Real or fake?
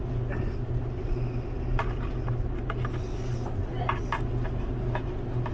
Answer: real